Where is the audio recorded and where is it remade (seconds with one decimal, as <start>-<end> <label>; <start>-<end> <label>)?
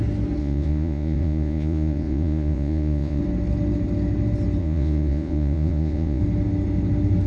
0.0-0.4 recorded; 0.4-3.2 remade; 3.2-4.6 recorded; 4.6-6.2 remade; 6.2-7.3 recorded